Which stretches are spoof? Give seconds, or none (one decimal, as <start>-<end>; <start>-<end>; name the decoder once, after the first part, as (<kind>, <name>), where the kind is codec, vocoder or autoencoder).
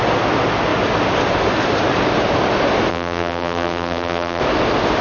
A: 2.9-4.4 (vocoder, BigVGAN v2)